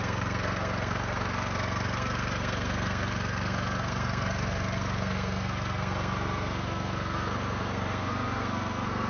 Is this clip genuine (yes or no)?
no